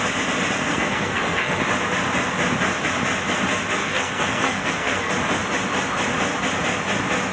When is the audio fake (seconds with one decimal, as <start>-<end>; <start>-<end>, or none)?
0.6-1.6; 3.8-5.1